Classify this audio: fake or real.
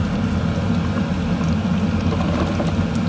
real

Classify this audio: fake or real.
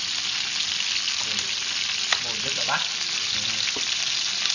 real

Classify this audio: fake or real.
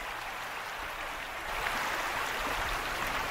real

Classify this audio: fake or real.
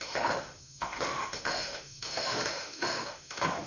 fake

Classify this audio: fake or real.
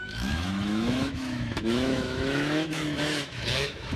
fake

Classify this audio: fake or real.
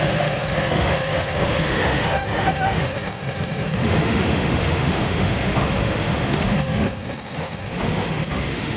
fake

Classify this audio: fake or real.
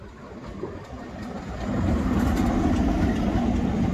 real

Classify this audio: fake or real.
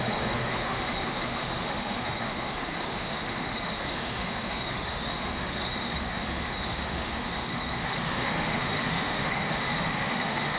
fake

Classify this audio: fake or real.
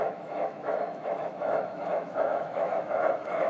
fake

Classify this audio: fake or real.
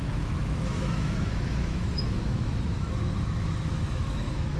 fake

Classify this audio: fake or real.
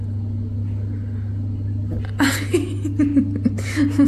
real